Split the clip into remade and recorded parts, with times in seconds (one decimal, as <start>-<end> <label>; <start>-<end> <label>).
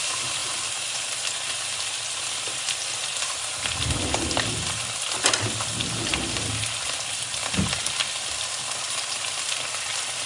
0.0-10.3 recorded